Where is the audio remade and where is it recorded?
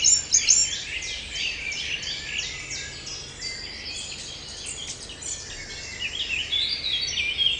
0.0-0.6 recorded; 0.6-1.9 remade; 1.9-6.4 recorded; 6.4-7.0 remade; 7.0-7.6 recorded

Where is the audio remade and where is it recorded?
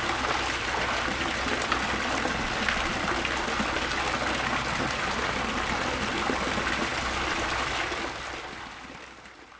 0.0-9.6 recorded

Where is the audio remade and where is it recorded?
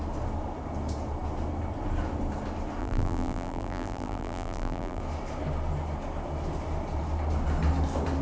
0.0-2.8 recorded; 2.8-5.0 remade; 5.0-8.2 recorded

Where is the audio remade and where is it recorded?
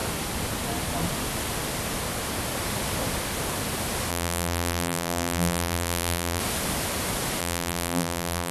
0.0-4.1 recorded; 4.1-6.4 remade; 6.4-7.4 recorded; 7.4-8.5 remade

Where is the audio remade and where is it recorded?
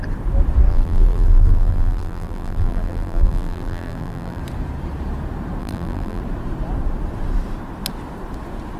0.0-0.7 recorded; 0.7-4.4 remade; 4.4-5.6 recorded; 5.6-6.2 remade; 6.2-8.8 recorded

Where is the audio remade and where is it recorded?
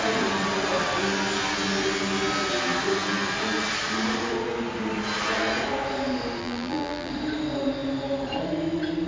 0.0-6.4 recorded; 6.4-7.1 remade; 7.1-9.1 recorded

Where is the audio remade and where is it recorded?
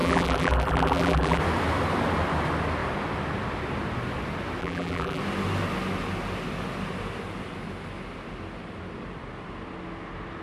0.0-1.4 remade; 1.4-4.6 recorded; 4.6-5.2 remade; 5.2-10.4 recorded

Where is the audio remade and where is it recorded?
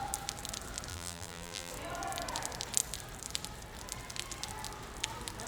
0.0-0.9 recorded; 0.9-1.7 remade; 1.7-5.5 recorded